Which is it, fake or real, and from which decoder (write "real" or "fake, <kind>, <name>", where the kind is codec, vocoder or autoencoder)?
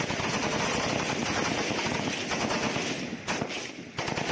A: real